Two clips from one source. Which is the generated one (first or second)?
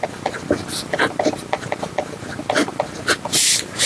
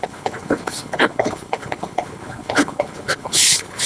second